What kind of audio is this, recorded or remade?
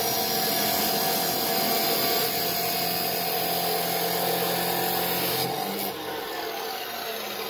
recorded